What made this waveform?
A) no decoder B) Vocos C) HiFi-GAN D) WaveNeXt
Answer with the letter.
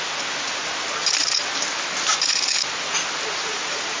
A